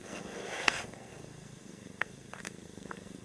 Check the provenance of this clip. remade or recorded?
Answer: remade